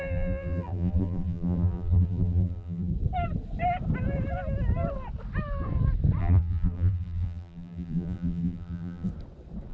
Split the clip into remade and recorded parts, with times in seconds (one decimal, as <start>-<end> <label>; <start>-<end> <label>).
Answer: 0.0-2.9 remade; 2.9-6.2 recorded; 6.2-9.1 remade; 9.1-9.7 recorded